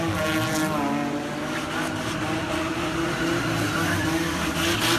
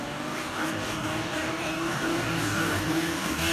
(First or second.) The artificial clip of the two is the second